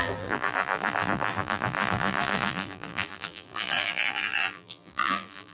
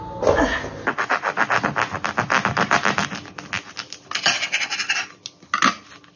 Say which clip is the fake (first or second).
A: first